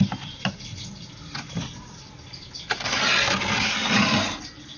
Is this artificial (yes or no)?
no